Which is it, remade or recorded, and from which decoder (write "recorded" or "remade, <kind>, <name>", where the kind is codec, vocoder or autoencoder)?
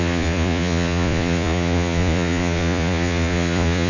remade, vocoder, Vocos